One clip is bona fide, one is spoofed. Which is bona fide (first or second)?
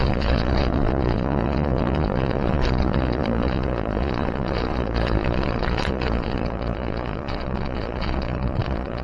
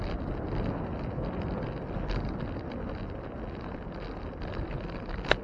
second